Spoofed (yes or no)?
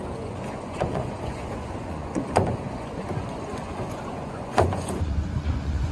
yes